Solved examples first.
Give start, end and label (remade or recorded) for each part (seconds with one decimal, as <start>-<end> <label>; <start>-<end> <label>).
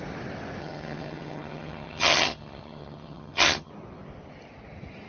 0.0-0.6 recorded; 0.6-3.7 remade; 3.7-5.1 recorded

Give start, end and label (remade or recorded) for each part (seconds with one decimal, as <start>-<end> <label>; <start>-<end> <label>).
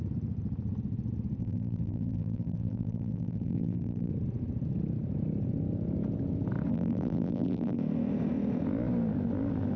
0.0-1.4 recorded; 1.4-4.1 remade; 4.1-6.7 recorded; 6.7-7.8 remade; 7.8-9.8 recorded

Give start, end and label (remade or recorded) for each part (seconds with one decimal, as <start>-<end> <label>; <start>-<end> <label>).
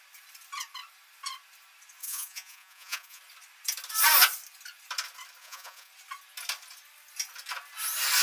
0.0-2.0 recorded; 2.0-3.2 remade; 3.2-5.4 recorded; 5.4-5.9 remade; 5.9-8.2 recorded